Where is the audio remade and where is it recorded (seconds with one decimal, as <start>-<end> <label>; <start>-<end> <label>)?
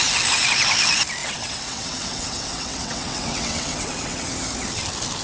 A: 0.0-1.2 recorded; 1.2-4.3 remade; 4.3-5.2 recorded